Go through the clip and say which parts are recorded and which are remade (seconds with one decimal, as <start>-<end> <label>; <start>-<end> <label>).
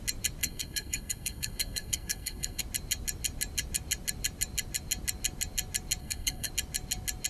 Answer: 0.0-0.4 recorded; 0.4-2.6 remade; 2.6-6.0 recorded; 6.0-6.5 remade; 6.5-7.3 recorded